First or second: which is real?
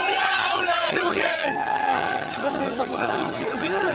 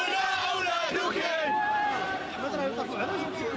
second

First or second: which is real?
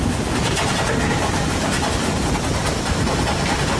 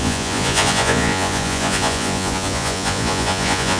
first